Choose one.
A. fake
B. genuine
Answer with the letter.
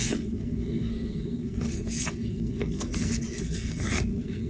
A